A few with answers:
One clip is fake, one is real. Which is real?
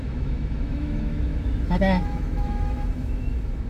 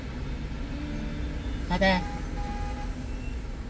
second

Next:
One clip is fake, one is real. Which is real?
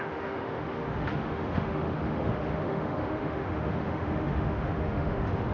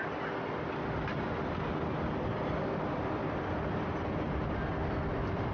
second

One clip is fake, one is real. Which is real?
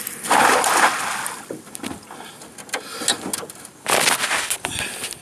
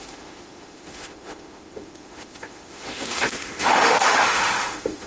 first